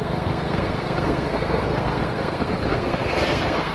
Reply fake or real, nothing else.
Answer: fake